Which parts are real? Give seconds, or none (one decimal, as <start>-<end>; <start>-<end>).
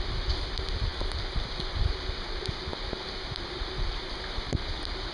0.0-5.1